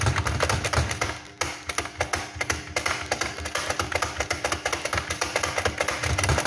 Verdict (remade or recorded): recorded